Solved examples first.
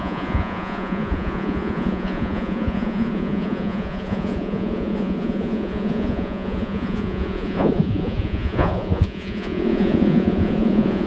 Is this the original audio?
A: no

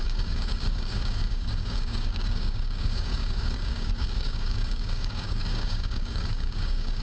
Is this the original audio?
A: no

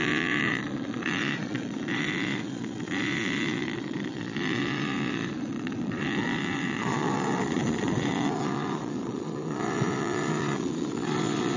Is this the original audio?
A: no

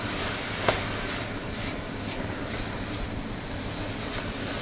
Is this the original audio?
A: yes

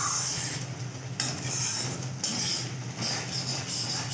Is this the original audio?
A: yes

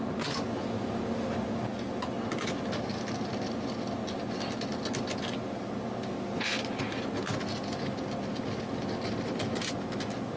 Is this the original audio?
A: yes